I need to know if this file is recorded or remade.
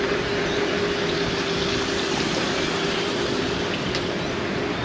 recorded